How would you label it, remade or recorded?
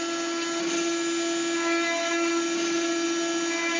recorded